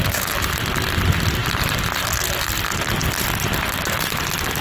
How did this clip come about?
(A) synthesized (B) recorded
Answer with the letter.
B